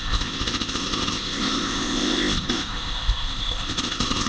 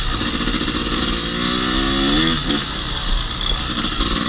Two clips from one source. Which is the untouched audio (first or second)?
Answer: second